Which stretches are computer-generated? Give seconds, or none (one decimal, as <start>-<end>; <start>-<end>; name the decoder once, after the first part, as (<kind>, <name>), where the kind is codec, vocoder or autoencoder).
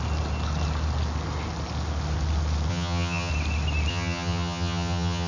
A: 2.7-3.3 (vocoder, HiFi-GAN); 3.9-5.3